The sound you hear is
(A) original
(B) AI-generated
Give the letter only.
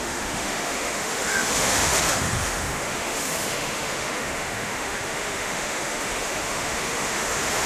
B